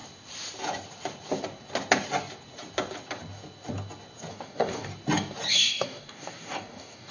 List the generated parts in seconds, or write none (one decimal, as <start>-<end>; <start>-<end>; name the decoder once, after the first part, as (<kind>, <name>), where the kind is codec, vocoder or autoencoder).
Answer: 4.3-4.9 (codec, DAC); 5.5-7.1